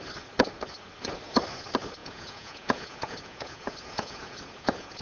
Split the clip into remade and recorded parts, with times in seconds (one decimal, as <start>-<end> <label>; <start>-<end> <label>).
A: 0.0-2.0 recorded; 2.0-5.0 remade